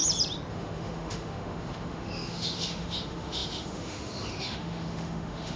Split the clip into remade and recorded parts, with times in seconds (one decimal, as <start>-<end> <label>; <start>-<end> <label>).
0.0-0.5 recorded; 0.5-5.6 remade